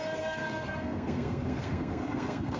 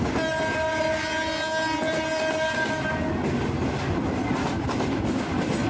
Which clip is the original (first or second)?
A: second